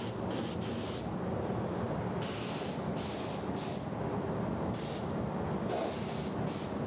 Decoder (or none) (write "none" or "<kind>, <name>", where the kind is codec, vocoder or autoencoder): none